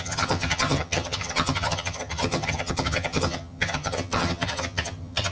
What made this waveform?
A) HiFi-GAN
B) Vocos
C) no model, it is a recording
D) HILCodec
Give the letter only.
A